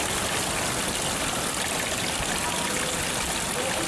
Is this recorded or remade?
recorded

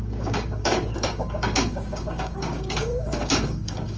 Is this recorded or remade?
remade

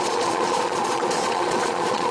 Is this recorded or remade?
remade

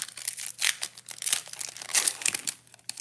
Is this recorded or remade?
recorded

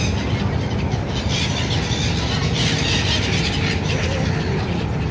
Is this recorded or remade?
recorded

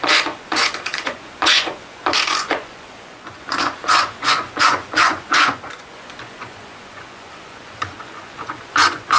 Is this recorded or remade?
remade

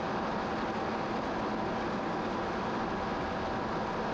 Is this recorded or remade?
recorded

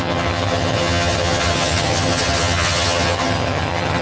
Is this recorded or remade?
remade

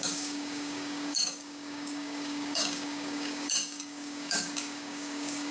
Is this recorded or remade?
remade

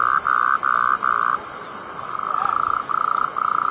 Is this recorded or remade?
recorded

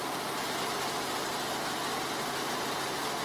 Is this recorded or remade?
recorded